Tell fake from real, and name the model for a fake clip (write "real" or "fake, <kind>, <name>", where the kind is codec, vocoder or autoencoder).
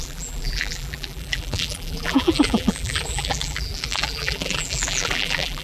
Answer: fake, vocoder, BigVGAN v2